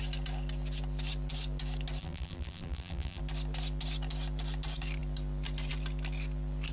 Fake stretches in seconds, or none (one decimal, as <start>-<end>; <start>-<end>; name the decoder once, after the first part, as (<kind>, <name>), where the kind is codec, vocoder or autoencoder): 2.0-3.2 (vocoder, BigVGAN v2)